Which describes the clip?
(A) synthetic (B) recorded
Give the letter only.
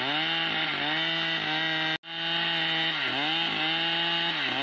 B